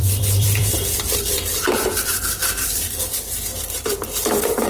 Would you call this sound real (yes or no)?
no